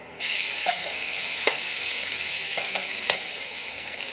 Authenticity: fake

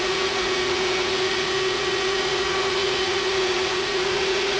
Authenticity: fake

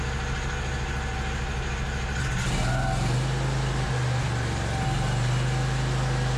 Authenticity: real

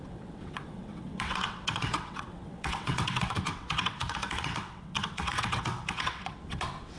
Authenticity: fake